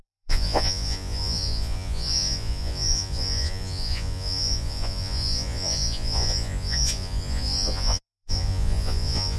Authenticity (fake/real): fake